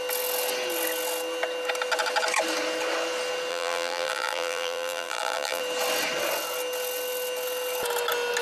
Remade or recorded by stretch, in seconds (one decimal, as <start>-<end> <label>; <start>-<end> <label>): 0.0-3.5 recorded; 3.5-5.6 remade; 5.6-8.4 recorded